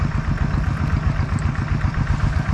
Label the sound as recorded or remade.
recorded